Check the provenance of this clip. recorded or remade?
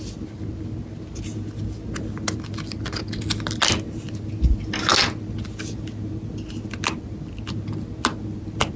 recorded